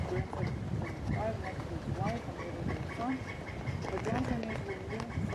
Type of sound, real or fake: real